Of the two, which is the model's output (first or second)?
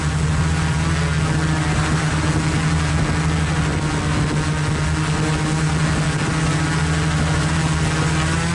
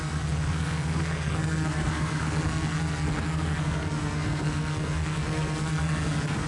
second